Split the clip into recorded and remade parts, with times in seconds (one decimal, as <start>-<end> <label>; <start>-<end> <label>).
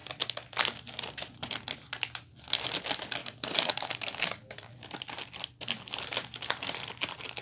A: 0.0-3.2 recorded; 3.2-4.7 remade; 4.7-7.4 recorded